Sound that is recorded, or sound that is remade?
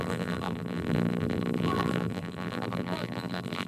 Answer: remade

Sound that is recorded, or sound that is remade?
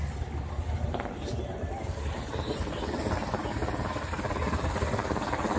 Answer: recorded